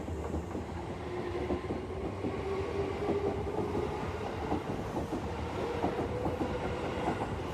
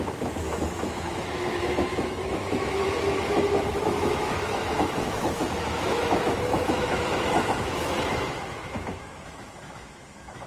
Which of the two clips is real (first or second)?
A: first